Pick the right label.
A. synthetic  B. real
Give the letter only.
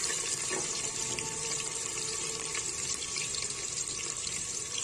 A